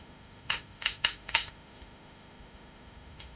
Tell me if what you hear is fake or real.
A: fake